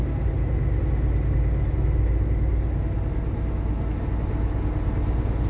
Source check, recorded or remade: recorded